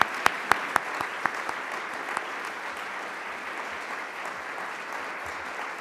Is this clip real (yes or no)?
yes